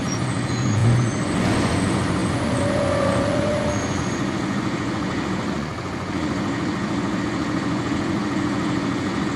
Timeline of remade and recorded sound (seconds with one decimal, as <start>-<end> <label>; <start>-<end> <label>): 0.0-9.4 remade

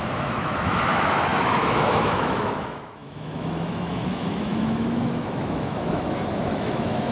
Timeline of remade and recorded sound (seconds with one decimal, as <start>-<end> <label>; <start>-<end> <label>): 0.0-7.1 remade

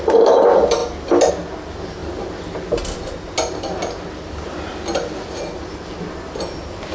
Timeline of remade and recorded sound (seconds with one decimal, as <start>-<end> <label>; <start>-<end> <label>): 0.0-0.8 remade; 0.8-1.3 recorded; 1.3-2.0 remade; 2.0-6.0 recorded; 6.0-6.9 remade

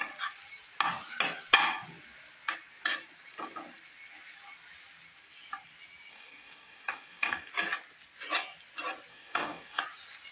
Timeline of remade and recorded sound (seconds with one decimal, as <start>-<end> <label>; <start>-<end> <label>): 0.0-6.1 recorded; 6.1-7.5 remade; 7.5-9.1 recorded; 9.1-9.8 remade; 9.8-10.3 recorded

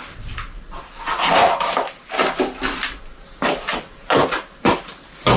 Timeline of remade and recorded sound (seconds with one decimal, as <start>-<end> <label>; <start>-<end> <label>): 0.0-5.4 recorded

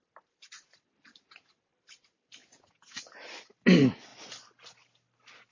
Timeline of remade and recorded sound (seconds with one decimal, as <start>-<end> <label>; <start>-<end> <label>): 0.0-2.4 recorded; 2.4-3.0 remade; 3.0-5.5 recorded